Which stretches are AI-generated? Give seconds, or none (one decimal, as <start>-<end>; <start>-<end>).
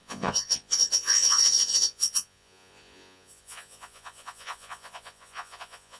0.0-6.0